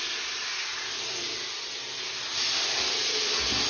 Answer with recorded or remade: recorded